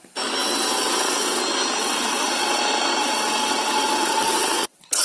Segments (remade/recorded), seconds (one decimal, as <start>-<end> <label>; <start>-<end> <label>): 0.0-0.4 recorded; 0.4-1.4 remade; 1.4-1.8 recorded; 1.8-2.6 remade; 2.6-3.0 recorded; 3.0-5.0 remade